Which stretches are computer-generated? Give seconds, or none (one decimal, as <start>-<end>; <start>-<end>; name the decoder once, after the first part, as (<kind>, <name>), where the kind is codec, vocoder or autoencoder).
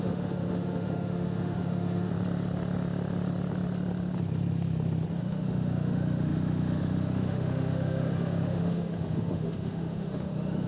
0.0-2.1 (autoencoder, DAC-VAE); 5.2-10.7